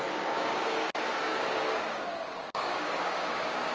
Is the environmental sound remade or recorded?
remade